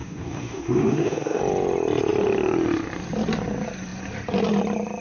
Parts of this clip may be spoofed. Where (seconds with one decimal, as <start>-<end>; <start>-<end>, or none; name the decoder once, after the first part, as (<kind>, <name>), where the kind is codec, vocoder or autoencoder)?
0.0-1.4 (autoencoder, DAC-VAE)